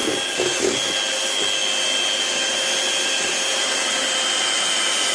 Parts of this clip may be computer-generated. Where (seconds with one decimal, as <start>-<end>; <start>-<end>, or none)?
none